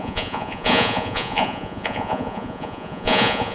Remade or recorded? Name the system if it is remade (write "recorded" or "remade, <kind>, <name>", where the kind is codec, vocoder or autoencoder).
remade, vocoder, Vocos